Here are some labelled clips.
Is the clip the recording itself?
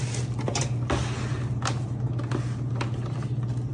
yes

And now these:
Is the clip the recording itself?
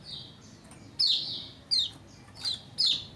yes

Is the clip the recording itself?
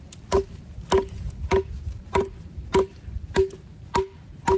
yes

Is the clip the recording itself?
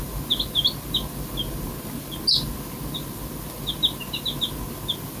yes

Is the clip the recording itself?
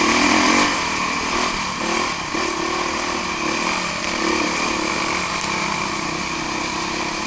yes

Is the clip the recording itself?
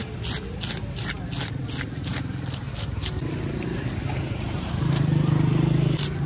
yes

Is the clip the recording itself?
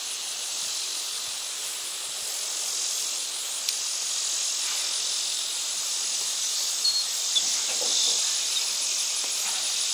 yes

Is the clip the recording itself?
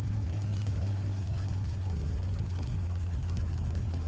no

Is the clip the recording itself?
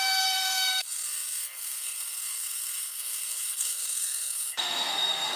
no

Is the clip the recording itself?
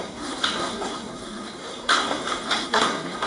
no